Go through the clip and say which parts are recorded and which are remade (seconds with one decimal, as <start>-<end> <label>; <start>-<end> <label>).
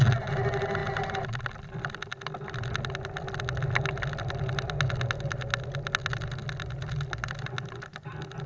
0.0-8.5 recorded